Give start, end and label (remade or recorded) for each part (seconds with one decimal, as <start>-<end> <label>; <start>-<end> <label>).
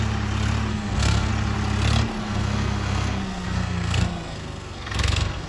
0.0-0.7 recorded; 0.7-1.3 remade; 1.3-2.2 recorded; 2.2-5.5 remade